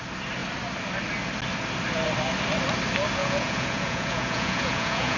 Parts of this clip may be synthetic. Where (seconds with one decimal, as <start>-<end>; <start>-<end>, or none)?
3.2-5.2